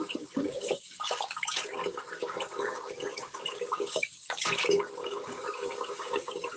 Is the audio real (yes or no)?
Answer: no